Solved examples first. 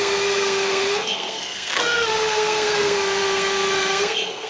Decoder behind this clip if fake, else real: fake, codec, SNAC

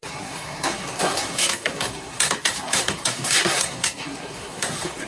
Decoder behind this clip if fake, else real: fake, codec, SNAC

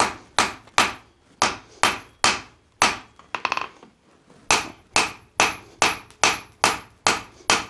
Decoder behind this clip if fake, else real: real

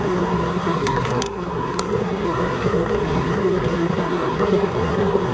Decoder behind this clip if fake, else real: fake, codec, SNAC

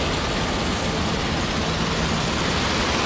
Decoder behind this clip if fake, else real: real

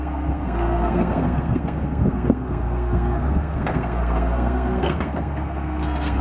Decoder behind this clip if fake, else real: fake, codec, SNAC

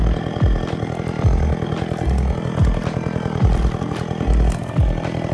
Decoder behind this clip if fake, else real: real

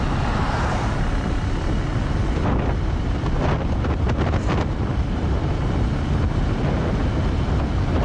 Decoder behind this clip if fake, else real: real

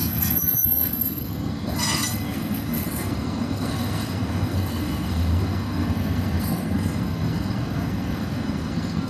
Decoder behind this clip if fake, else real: fake, codec, SNAC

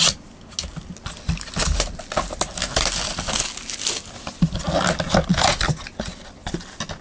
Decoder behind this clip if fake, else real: real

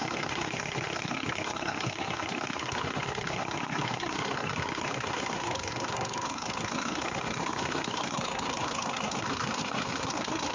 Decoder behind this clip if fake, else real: fake, codec, SNAC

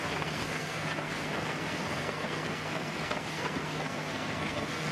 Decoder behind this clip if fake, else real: fake, codec, SNAC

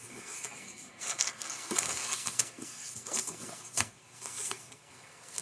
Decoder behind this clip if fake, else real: fake, codec, SNAC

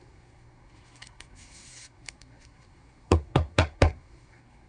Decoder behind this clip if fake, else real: fake, codec, SNAC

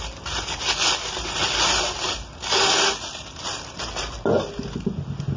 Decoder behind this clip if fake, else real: real